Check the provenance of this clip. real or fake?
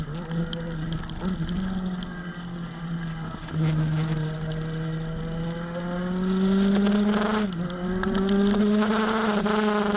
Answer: real